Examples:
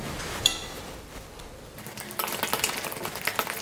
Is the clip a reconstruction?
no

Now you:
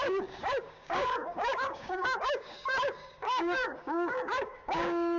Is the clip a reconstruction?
yes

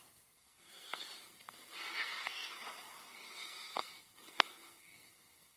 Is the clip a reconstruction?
yes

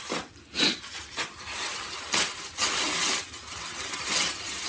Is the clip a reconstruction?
no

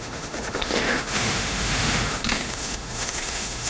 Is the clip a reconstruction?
yes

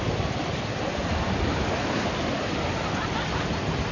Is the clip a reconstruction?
no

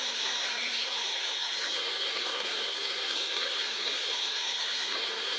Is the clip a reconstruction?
yes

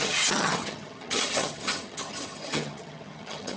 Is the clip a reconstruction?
yes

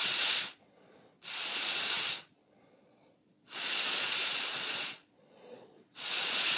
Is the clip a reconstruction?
yes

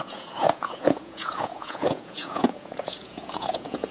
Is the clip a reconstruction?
yes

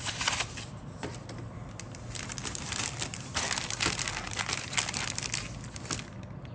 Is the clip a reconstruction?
no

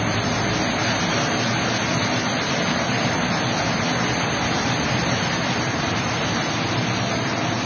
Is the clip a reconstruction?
no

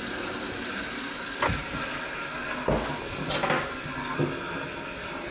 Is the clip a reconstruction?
no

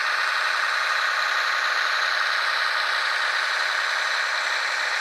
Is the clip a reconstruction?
no